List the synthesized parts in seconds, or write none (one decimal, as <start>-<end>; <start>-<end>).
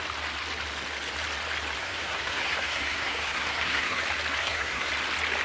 1.8-4.0; 4.4-4.9